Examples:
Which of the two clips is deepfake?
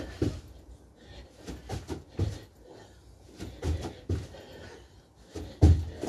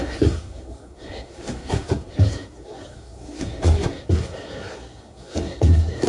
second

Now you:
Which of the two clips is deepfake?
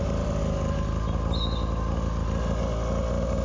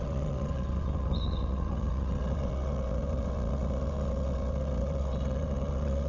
second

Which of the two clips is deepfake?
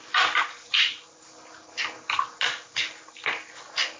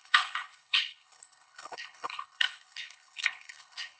second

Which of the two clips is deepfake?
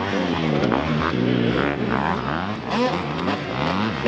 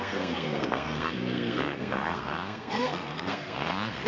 second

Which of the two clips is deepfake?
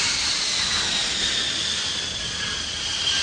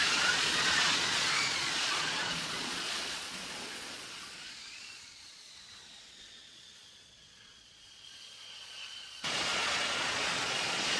second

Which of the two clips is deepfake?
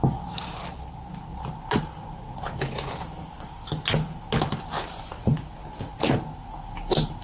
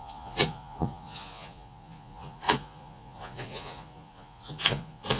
second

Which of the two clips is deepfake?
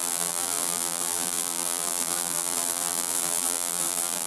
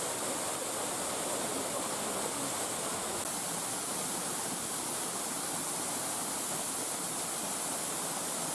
first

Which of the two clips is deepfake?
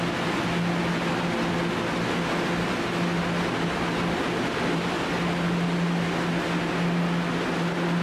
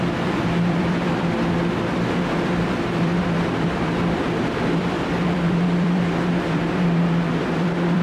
second